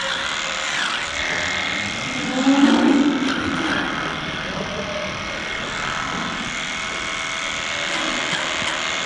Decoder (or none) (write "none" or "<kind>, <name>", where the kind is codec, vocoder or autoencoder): none